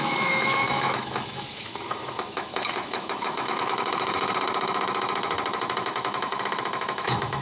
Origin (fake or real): fake